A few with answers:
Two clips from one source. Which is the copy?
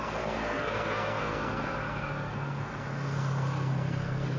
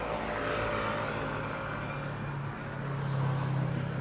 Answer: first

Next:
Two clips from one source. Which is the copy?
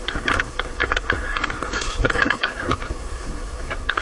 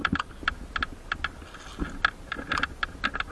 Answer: first